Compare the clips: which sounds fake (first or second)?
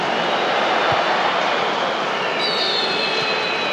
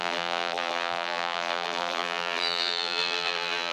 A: second